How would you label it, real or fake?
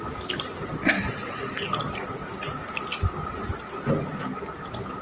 real